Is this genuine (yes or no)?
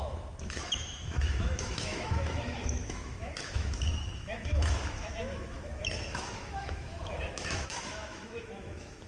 no